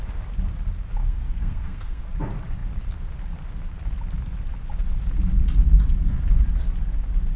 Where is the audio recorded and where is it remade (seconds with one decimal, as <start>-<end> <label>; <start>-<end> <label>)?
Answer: 0.0-1.0 recorded; 1.0-2.0 remade; 2.0-7.4 recorded